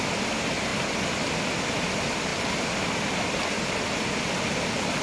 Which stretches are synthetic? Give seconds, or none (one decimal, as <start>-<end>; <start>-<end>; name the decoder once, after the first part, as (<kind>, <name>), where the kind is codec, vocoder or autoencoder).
0.7-1.9 (vocoder, BigVGAN v2); 2.3-3.6